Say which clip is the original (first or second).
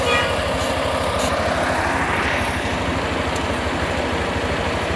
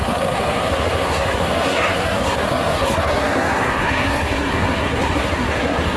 first